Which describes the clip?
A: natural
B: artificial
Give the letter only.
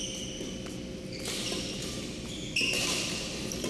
A